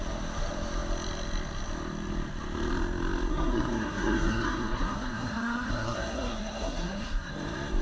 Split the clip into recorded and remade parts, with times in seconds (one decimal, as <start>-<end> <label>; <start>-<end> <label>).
0.0-3.3 recorded; 3.3-7.3 remade; 7.3-7.8 recorded